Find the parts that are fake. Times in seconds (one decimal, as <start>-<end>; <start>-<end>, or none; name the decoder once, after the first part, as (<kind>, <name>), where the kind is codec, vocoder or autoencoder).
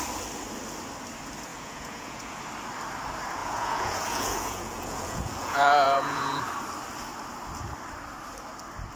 1.5-2.4 (vocoder, Vocos); 3.4-6.4